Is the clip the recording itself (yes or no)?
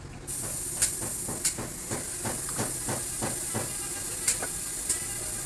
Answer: yes